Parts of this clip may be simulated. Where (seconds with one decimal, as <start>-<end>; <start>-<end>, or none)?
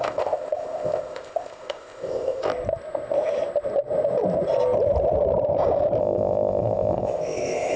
0.0-2.5; 6.0-7.8